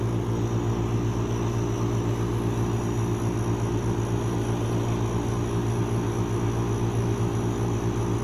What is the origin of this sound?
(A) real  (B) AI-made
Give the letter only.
A